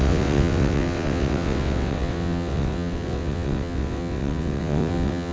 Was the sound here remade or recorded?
remade